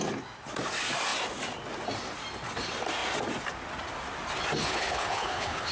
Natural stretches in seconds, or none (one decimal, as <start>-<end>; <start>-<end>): 0.0-4.6